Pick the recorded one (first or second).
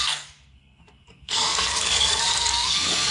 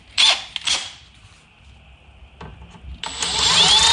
second